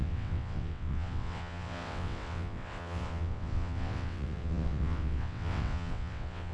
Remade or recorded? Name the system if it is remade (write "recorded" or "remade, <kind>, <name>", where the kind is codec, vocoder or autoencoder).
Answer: remade, vocoder, WaveNeXt